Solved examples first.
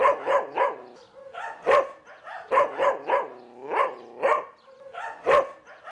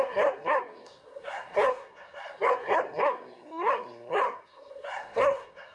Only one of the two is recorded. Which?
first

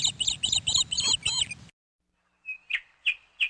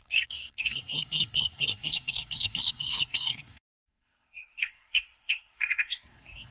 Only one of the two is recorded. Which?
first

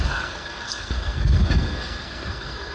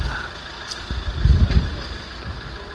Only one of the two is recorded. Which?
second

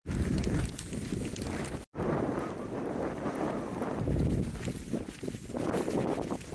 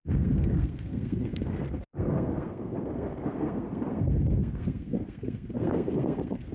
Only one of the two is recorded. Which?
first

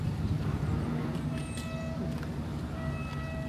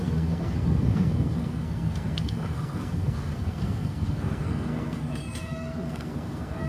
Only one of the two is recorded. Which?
first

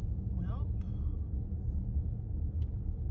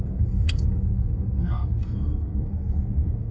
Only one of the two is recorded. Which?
first